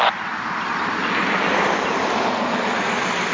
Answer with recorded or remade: recorded